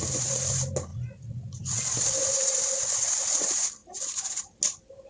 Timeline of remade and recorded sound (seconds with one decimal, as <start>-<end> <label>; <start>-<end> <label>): 0.0-5.1 recorded